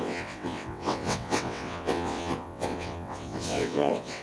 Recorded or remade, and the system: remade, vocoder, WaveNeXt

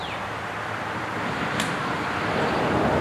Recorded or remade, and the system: remade, vocoder, BigVGAN v2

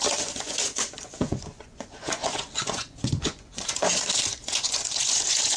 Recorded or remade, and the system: remade, vocoder, Vocos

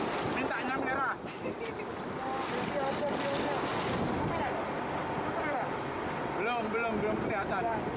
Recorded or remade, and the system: recorded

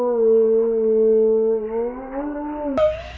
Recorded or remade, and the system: recorded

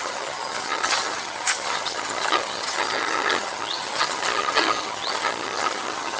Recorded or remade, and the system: remade, vocoder, HiFi-GAN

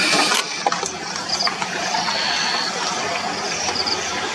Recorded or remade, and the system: recorded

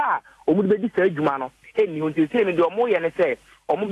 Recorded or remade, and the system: recorded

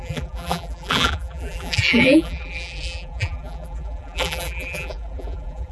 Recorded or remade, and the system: remade, vocoder, BigVGAN v2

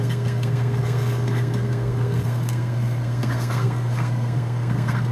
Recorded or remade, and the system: remade, codec, SNAC